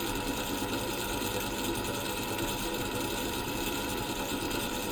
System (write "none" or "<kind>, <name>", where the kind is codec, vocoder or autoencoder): vocoder, BigVGAN v2